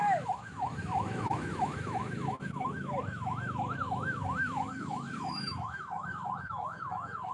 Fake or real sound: fake